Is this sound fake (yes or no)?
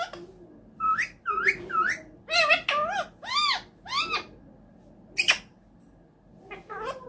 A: no